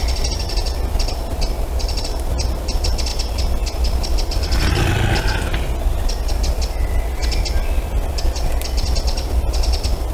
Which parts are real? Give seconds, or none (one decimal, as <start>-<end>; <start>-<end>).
0.0-10.1